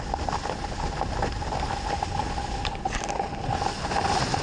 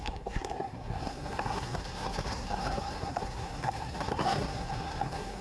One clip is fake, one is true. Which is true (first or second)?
first